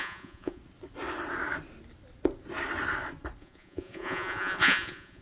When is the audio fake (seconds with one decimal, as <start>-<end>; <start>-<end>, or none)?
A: 0.0-0.6; 3.4-5.2